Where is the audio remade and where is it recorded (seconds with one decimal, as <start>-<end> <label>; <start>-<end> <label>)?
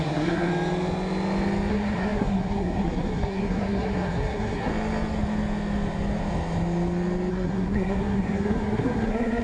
0.0-0.5 remade; 0.5-1.7 recorded; 1.7-4.7 remade; 4.7-7.3 recorded; 7.3-9.4 remade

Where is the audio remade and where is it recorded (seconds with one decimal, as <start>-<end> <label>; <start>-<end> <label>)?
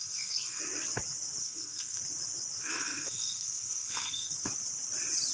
0.0-0.6 remade; 0.6-1.4 recorded; 1.4-2.0 remade; 2.0-2.6 recorded; 2.6-4.3 remade; 4.3-5.3 recorded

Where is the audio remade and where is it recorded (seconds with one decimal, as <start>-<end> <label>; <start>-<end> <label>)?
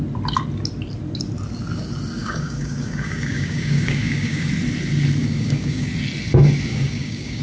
0.0-2.2 recorded; 2.2-4.5 remade; 4.5-5.2 recorded; 5.2-5.9 remade; 5.9-6.7 recorded; 6.7-7.4 remade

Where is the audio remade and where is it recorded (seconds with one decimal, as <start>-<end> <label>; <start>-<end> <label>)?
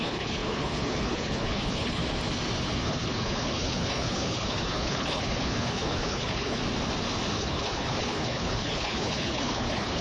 0.0-2.0 remade; 2.0-2.6 recorded; 2.6-6.6 remade; 6.6-7.4 recorded; 7.4-10.0 remade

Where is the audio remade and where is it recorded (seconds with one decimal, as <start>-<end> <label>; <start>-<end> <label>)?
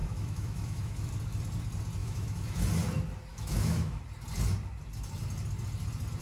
0.0-1.1 remade; 1.1-2.0 recorded; 2.0-2.6 remade; 2.6-3.3 recorded; 3.3-4.0 remade; 4.0-6.2 recorded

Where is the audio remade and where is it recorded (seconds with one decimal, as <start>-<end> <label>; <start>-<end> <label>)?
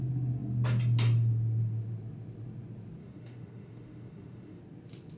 0.0-3.0 recorded; 3.0-4.6 remade; 4.6-5.2 recorded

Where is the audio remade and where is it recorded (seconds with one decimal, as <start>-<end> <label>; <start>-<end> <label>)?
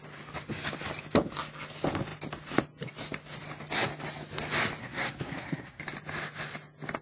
0.0-4.8 recorded; 4.8-5.8 remade; 5.8-7.0 recorded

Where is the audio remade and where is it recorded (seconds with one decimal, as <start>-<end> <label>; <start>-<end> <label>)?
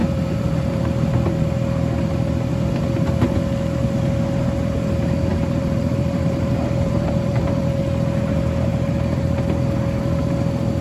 0.0-0.8 remade; 0.8-5.3 recorded; 5.3-7.8 remade; 7.8-8.7 recorded; 8.7-9.3 remade; 9.3-10.8 recorded